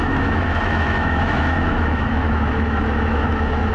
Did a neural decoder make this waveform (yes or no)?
yes